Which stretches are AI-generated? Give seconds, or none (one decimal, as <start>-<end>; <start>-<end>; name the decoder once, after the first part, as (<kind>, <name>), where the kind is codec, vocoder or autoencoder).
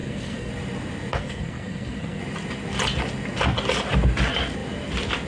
0.0-0.5 (codec, SNAC); 1.1-2.2